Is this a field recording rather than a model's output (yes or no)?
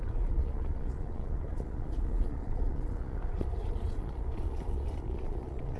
no